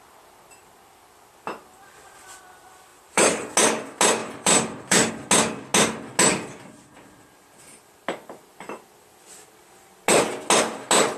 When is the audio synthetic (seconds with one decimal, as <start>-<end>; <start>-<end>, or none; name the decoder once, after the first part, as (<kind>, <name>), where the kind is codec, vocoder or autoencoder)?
2.9-3.5 (vocoder, BigVGAN v2); 4.2-5.1